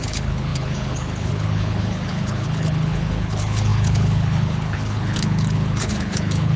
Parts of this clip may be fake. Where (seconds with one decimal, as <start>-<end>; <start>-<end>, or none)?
0.0-6.6